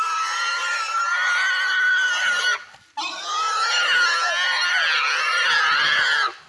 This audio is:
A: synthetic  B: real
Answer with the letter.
B